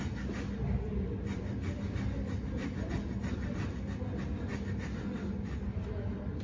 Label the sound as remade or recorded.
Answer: recorded